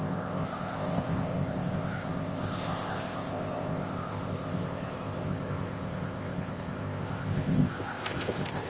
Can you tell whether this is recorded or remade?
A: remade